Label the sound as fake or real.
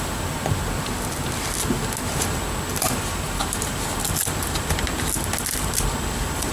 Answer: real